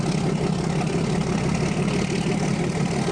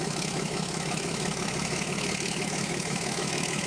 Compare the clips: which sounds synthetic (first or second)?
second